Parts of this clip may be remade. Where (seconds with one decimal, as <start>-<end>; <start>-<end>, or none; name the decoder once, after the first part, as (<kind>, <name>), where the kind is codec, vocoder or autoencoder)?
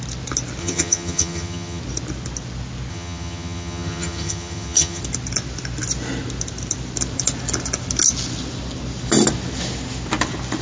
0.6-1.8 (vocoder, HiFi-GAN); 2.9-5.0